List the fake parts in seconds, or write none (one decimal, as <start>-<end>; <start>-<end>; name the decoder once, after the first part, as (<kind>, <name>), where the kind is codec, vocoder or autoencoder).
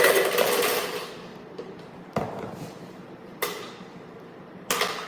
1.3-4.4 (vocoder, BigVGAN v2)